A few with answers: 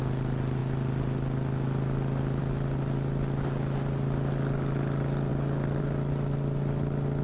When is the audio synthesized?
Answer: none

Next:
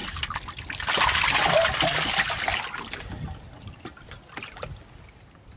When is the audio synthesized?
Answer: none

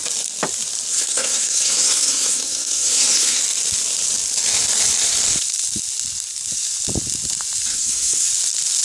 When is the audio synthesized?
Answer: 0.9-3.4 (codec, SNAC); 7.7-8.3

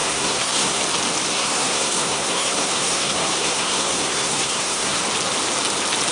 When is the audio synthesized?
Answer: 0.0-0.8 (codec, SNAC); 1.3-5.0

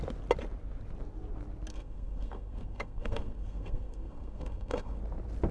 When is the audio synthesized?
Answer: 1.7-5.0 (codec, SNAC)

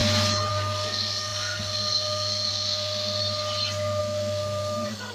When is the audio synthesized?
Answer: 0.5-3.2 (codec, SNAC); 4.0-5.1